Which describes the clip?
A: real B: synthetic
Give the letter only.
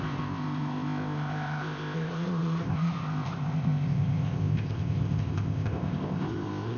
B